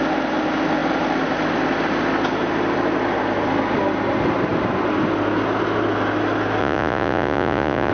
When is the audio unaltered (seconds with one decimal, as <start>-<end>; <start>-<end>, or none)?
0.0-6.6